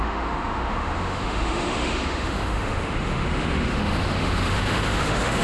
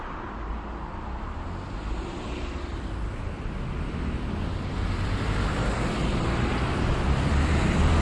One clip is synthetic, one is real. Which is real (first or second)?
second